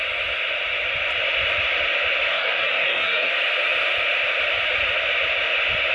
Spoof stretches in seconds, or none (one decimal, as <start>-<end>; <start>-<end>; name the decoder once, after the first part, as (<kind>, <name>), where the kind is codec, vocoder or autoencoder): 2.3-3.3 (codec, DAC)